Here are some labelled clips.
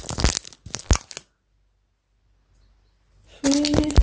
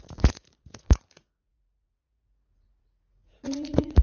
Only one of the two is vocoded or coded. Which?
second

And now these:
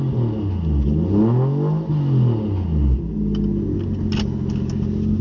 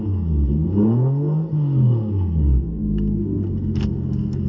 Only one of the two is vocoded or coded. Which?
second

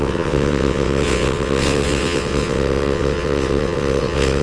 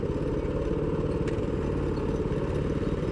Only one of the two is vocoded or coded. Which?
first